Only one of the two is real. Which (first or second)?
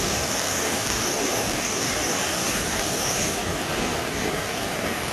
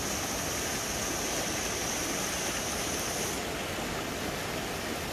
second